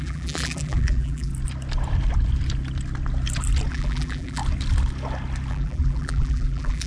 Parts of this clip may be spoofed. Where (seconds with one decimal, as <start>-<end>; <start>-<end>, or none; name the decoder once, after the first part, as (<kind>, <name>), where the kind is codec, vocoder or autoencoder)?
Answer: 0.0-1.3 (vocoder, BigVGAN v2); 3.7-4.4; 5.5-6.9